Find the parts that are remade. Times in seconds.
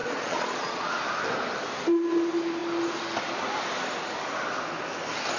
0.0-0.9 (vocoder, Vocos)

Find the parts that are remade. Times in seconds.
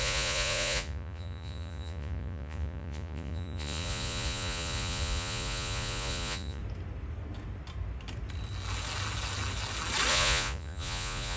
0.0-6.6 (vocoder, Vocos); 10.1-11.4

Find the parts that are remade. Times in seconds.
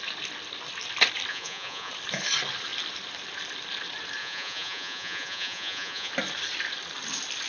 1.3-1.9 (vocoder, Vocos); 4.2-6.1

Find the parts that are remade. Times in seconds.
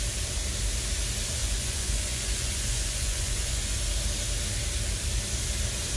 1.4-3.8 (vocoder, Vocos)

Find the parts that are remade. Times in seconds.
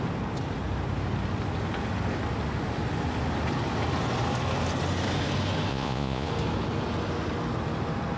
5.7-6.3 (vocoder, Vocos)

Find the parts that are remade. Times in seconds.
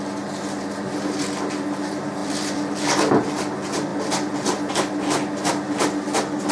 none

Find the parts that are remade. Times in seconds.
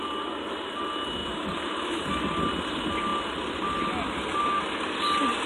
none